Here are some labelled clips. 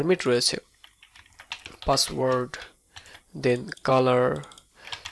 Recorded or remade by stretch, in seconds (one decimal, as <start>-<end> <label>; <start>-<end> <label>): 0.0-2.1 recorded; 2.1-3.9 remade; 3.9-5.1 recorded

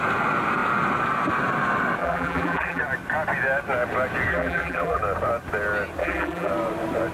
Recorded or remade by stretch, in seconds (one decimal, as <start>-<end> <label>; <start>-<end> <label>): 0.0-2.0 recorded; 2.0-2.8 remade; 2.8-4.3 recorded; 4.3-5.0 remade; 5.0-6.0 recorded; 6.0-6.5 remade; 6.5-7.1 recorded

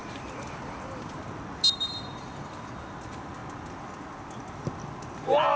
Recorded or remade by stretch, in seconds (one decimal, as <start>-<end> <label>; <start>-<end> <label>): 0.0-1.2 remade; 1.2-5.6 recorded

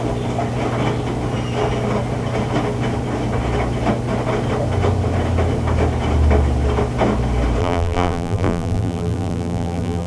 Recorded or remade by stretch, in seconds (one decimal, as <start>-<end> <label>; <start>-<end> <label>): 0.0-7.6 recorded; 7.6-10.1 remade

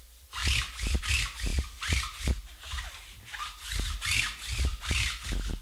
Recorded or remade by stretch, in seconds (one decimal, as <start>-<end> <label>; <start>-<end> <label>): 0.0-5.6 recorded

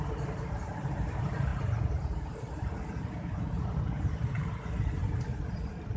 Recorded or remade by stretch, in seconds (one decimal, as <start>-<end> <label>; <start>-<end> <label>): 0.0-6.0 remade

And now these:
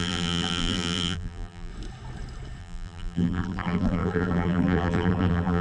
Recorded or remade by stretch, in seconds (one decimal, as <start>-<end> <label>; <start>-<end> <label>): 0.0-1.7 remade; 1.7-2.6 recorded; 2.6-5.6 remade